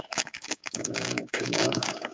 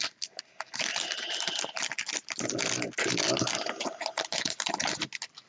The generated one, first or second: first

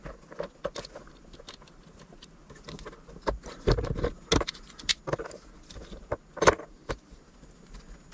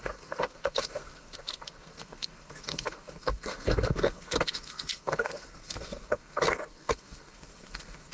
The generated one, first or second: second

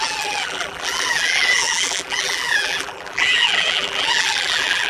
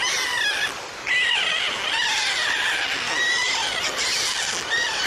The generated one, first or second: first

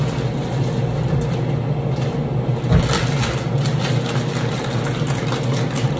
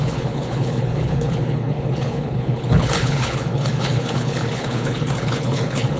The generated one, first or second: second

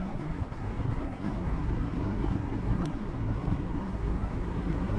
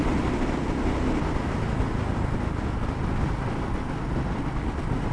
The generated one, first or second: first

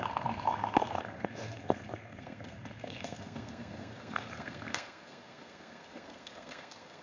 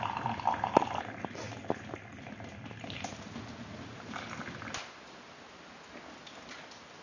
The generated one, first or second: first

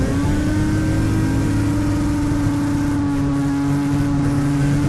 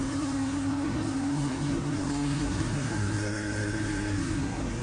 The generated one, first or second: second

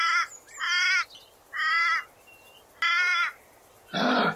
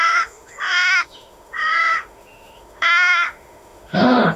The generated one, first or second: second